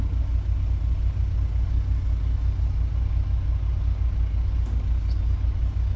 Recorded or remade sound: recorded